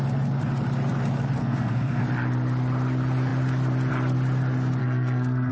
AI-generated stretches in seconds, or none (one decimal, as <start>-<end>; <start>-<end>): 1.4-2.0; 4.8-5.5